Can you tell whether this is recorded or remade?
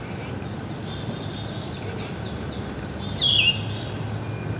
recorded